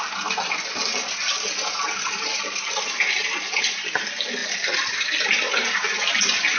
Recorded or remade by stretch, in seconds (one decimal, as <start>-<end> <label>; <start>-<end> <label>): 0.0-6.6 recorded